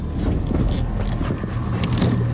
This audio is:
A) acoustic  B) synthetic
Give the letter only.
A